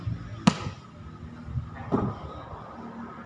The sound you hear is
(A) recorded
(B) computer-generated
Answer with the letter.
A